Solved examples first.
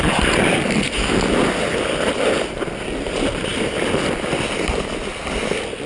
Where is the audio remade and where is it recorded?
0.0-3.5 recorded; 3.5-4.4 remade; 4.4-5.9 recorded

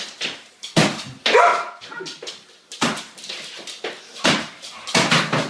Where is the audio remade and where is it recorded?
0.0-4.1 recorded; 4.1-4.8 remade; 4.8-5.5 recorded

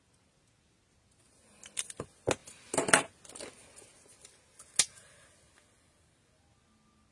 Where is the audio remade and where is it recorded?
0.0-7.1 recorded

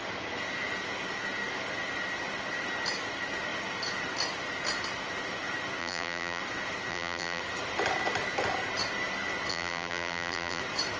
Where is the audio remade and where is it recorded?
0.0-5.8 recorded; 5.8-6.4 remade; 6.4-6.9 recorded; 6.9-7.4 remade; 7.4-9.5 recorded; 9.5-10.6 remade; 10.6-11.0 recorded

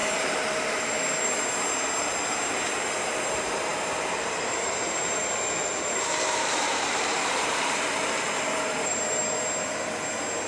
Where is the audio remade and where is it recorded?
0.0-9.2 remade; 9.2-10.5 recorded